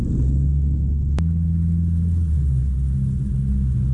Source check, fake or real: real